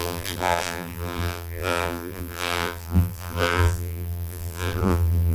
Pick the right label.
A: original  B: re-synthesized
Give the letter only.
B